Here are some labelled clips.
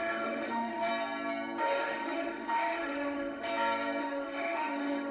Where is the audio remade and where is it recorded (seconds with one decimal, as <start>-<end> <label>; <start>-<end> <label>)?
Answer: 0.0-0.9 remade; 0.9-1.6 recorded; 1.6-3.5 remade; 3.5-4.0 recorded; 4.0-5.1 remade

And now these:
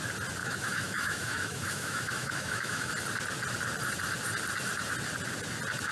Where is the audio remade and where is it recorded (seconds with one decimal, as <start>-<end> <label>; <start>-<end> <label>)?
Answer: 0.0-0.4 recorded; 0.4-2.9 remade; 2.9-5.9 recorded

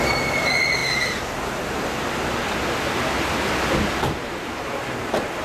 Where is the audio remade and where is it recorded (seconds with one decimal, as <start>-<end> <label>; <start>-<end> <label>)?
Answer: 0.0-5.4 recorded

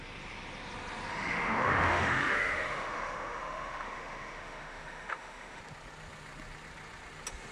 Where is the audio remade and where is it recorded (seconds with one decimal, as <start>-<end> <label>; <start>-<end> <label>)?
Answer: 0.0-1.1 recorded; 1.1-5.6 remade; 5.6-7.5 recorded